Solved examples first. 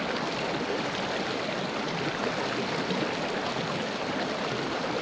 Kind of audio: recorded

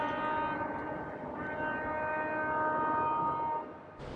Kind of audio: recorded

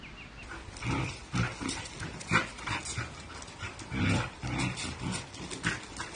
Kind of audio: recorded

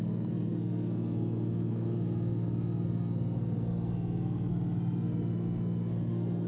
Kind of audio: remade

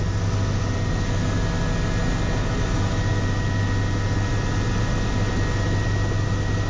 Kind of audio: recorded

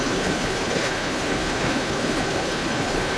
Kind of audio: remade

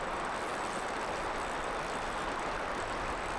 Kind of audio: recorded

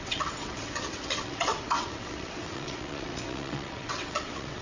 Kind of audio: remade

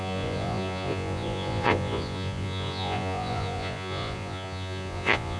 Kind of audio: remade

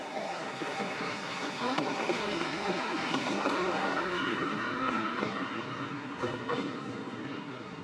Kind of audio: remade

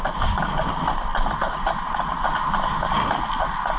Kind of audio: recorded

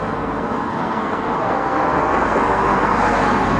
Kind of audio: remade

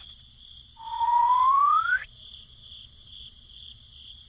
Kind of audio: remade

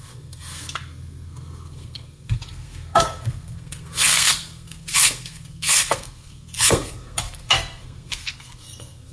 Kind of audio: remade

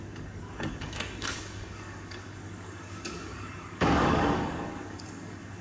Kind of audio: remade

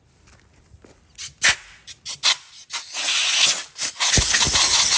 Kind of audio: recorded